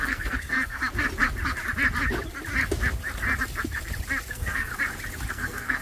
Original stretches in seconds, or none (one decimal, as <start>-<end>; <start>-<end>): 0.8-4.3; 4.7-5.3